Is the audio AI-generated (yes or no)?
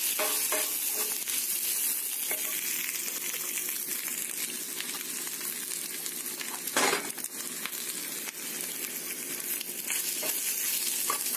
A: no